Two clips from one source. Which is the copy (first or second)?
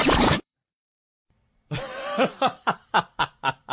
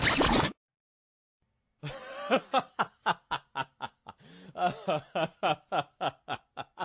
first